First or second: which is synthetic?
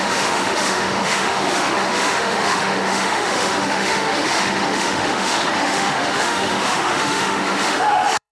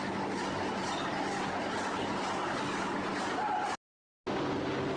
first